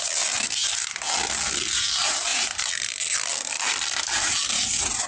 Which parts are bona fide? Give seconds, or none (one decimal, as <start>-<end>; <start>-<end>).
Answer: 0.0-2.3; 4.3-5.1